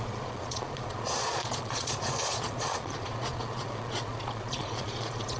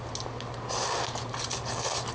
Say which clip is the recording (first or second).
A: second